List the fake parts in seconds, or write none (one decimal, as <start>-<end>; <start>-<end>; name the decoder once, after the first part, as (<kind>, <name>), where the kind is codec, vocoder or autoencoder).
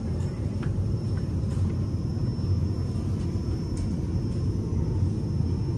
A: 0.0-2.1 (vocoder, BigVGAN v2)